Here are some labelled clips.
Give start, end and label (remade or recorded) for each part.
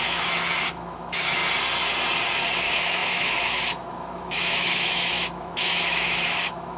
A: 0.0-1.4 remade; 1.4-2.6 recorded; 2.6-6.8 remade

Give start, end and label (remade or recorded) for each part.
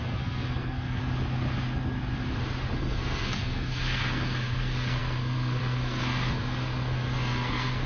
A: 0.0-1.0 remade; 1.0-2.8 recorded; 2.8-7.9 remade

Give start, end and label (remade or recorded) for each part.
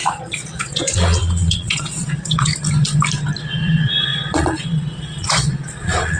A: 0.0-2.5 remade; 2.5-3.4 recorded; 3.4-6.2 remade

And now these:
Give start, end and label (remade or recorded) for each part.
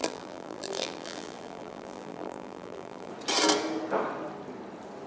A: 0.0-3.1 remade; 3.1-5.1 recorded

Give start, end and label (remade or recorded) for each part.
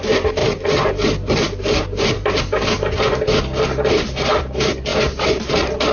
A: 0.0-0.4 recorded; 0.4-2.4 remade; 2.4-4.9 recorded; 4.9-5.5 remade; 5.5-5.9 recorded